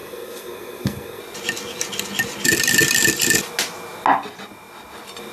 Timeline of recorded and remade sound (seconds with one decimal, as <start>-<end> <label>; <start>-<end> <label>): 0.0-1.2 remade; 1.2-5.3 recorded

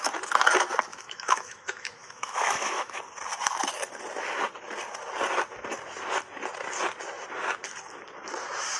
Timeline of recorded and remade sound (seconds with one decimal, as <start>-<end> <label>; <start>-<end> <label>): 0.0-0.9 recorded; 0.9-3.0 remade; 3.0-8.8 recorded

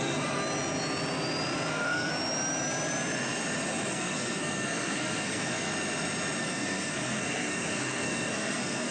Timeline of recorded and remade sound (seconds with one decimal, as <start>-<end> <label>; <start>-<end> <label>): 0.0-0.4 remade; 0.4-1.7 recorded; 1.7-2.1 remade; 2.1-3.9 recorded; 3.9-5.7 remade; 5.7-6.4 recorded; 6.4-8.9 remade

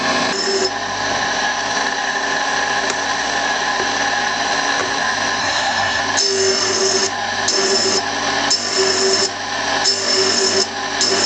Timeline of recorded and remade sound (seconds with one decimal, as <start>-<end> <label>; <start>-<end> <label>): 0.0-5.4 recorded; 5.4-6.0 remade; 6.0-11.3 recorded

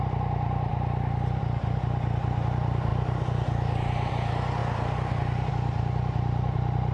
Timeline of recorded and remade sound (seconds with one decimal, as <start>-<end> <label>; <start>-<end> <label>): 0.0-0.7 recorded; 0.7-1.4 remade; 1.4-6.9 recorded